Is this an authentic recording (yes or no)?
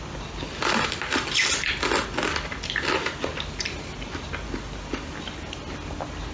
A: yes